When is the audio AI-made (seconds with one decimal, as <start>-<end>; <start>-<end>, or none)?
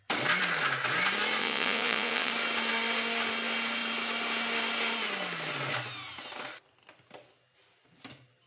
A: 1.4-2.3